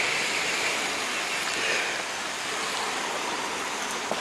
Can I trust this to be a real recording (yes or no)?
yes